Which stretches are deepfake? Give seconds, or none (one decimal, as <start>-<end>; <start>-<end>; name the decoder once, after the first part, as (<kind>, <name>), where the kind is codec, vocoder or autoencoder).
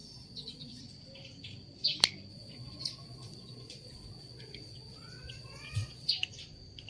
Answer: 0.0-0.8 (vocoder, Vocos); 2.3-6.1